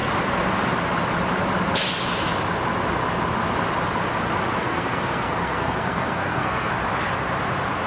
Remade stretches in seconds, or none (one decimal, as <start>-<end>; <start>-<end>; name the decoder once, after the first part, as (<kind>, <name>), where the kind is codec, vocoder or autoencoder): 4.6-6.7 (codec, SNAC)